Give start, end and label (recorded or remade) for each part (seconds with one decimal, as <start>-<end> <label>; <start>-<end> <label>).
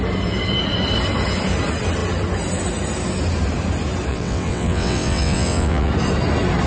0.0-4.1 recorded; 4.1-5.9 remade; 5.9-6.7 recorded